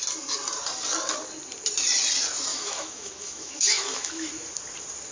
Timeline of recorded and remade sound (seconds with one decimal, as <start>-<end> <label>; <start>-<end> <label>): 0.0-2.5 recorded; 2.5-4.3 remade; 4.3-5.1 recorded